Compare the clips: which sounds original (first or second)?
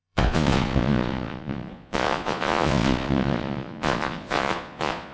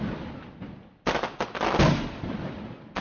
second